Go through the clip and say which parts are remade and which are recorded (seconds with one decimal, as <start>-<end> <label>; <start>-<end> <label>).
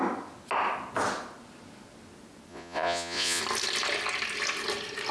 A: 0.0-2.5 recorded; 2.5-3.4 remade; 3.4-5.1 recorded